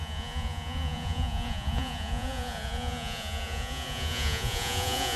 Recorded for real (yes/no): no